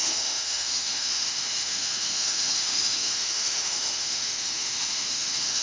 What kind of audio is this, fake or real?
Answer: fake